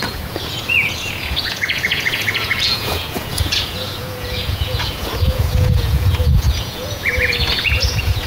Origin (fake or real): fake